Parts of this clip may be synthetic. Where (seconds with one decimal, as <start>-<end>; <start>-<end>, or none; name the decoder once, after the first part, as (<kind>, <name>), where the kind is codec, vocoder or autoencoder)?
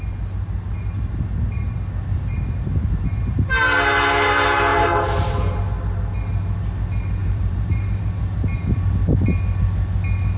4.7-5.6 (vocoder, BigVGAN v2); 7.2-8.0